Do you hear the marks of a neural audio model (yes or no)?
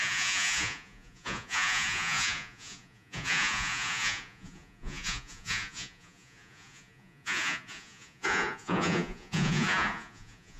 yes